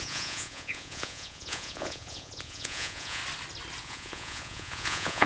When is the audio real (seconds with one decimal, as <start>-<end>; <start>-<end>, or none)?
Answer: 3.2-3.8